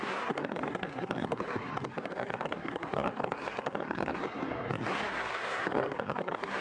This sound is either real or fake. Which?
fake